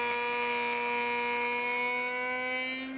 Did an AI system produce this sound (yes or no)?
no